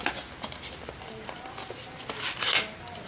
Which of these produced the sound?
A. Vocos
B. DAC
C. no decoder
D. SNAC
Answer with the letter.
C